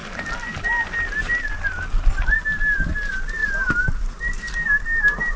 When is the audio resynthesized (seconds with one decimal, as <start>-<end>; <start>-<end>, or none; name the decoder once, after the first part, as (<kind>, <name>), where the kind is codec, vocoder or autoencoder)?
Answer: none